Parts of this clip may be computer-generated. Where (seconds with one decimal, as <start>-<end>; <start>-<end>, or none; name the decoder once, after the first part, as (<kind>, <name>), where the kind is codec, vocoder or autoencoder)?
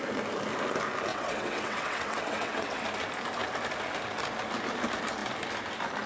1.1-2.8 (vocoder, WaveNeXt)